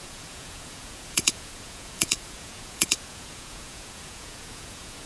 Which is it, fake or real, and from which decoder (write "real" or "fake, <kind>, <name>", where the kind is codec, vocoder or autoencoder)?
fake, vocoder, Vocos